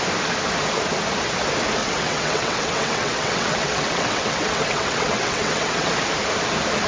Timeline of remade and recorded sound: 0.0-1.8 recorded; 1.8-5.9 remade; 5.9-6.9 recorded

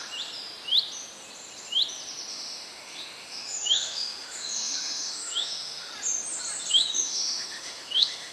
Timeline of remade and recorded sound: 0.0-2.3 recorded; 2.3-5.9 remade; 5.9-6.7 recorded; 6.7-8.3 remade